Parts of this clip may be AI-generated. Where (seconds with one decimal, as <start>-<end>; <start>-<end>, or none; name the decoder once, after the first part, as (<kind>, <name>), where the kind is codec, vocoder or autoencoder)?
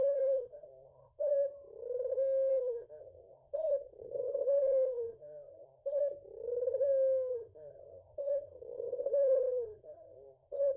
0.0-1.3 (codec, SNAC); 2.5-6.0; 7.3-10.8